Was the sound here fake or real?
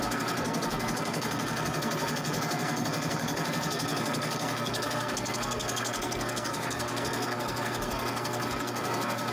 fake